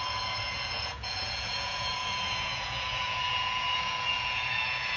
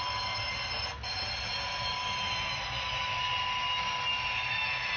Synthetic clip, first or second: first